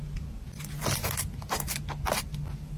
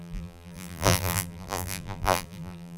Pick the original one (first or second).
first